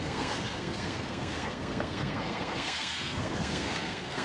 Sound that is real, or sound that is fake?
fake